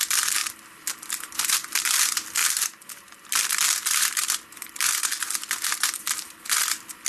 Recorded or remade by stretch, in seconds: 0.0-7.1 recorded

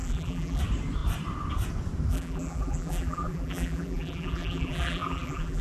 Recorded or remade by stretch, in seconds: 0.0-0.6 remade; 0.6-2.1 recorded; 2.1-5.6 remade